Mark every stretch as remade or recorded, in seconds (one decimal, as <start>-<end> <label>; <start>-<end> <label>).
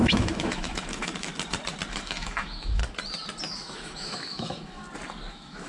0.0-1.3 remade; 1.3-1.9 recorded; 1.9-2.8 remade; 2.8-3.5 recorded; 3.5-4.8 remade; 4.8-5.3 recorded; 5.3-5.7 remade